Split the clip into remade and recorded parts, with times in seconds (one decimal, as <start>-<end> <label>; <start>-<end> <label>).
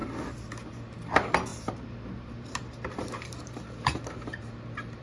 0.0-1.5 recorded; 1.5-4.5 remade; 4.5-5.0 recorded